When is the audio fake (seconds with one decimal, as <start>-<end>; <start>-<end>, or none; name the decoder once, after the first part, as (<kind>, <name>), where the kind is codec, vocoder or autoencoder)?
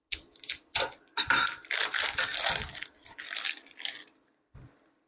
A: none